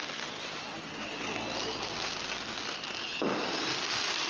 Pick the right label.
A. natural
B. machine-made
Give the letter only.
A